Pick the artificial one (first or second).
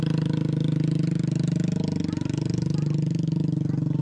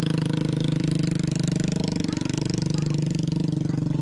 second